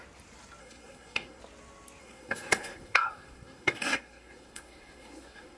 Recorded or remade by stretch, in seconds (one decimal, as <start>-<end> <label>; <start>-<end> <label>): 0.0-0.6 recorded; 0.6-1.4 remade; 1.4-2.0 recorded; 2.0-5.6 remade